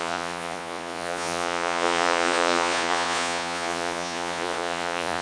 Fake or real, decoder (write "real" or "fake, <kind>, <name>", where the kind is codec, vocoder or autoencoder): fake, vocoder, Vocos